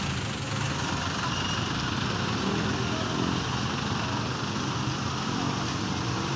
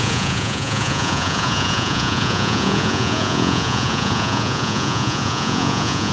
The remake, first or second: second